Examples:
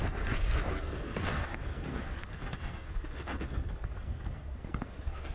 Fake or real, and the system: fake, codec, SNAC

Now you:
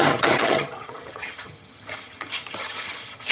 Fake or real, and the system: fake, vocoder, HiFi-GAN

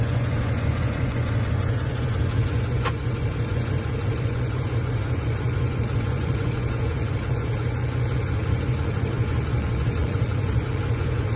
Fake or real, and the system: fake, vocoder, Vocos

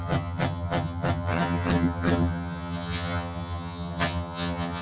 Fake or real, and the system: fake, vocoder, HiFi-GAN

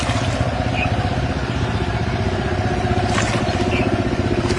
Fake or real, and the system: real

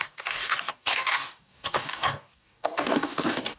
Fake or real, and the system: fake, codec, DAC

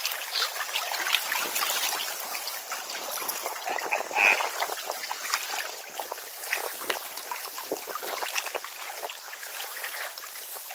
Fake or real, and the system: real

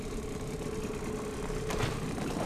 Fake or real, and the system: real